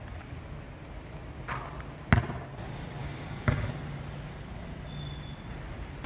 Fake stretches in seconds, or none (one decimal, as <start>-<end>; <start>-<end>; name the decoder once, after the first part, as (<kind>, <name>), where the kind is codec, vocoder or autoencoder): 3.0-3.7 (codec, DAC)